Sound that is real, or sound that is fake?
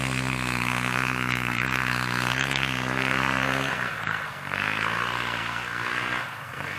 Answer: fake